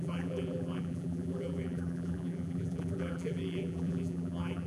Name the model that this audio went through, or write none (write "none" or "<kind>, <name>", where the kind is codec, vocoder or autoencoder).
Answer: vocoder, BigVGAN v2